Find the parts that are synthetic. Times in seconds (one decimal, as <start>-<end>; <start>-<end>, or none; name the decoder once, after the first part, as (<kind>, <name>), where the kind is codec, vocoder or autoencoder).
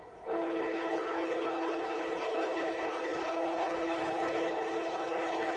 0.0-5.6 (codec, HILCodec)